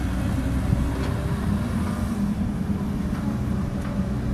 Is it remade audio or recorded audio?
recorded